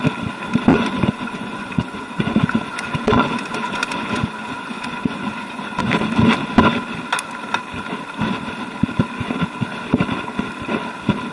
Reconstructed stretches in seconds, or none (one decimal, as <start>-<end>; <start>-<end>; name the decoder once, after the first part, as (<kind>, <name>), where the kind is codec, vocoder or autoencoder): 0.7-5.8 (vocoder, Vocos)